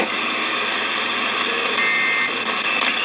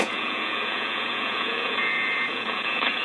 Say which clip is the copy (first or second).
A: second